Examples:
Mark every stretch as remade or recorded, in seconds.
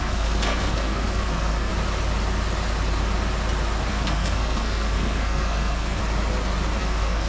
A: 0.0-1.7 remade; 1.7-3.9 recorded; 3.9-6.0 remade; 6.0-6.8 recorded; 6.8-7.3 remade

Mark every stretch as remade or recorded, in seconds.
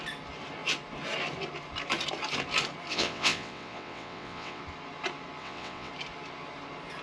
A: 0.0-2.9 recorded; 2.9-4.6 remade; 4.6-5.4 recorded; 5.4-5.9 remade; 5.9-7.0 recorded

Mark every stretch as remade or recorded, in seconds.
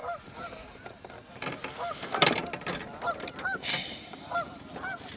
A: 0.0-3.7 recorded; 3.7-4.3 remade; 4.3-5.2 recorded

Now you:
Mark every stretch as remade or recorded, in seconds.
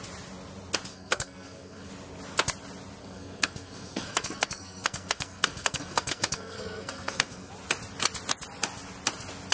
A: 0.0-0.9 recorded; 0.9-1.9 remade; 1.9-3.0 recorded; 3.0-7.5 remade; 7.5-9.5 recorded